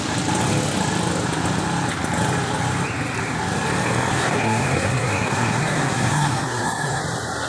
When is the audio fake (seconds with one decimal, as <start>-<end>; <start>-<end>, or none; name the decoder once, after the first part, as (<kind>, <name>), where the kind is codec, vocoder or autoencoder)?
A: 4.1-7.0 (codec, SNAC)